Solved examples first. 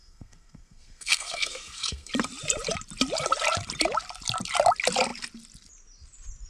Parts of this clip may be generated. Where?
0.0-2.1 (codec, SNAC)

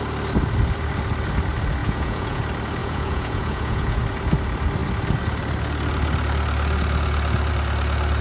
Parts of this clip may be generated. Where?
1.8-2.4 (vocoder, Vocos); 2.8-4.0